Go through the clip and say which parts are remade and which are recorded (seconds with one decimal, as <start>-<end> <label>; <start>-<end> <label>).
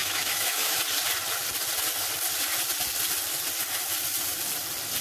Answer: 0.0-0.8 remade; 0.8-5.0 recorded